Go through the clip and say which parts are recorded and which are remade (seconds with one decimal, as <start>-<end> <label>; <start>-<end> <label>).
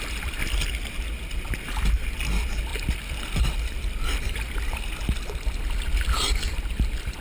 0.0-2.7 recorded; 2.7-3.8 remade; 3.8-7.2 recorded